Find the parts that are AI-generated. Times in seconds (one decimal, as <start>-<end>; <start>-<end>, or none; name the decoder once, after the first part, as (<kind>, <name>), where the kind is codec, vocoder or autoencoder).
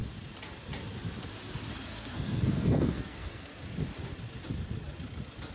1.7-3.5 (codec, SNAC)